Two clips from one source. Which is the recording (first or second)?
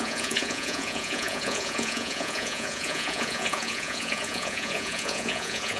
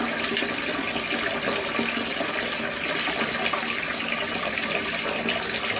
second